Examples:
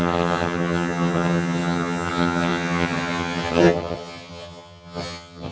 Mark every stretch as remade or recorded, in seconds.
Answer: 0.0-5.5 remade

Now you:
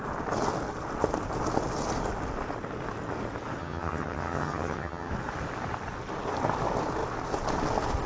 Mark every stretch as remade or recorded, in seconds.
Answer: 0.0-3.6 recorded; 3.6-5.1 remade; 5.1-8.1 recorded